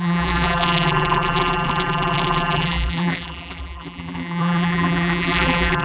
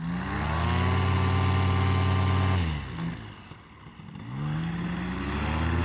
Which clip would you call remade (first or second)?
first